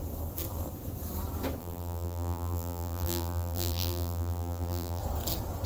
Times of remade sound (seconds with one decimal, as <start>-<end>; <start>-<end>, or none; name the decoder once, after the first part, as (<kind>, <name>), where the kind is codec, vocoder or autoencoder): 1.6-5.0 (vocoder, BigVGAN v2)